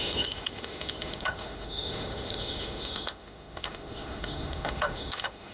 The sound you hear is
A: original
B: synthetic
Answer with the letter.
B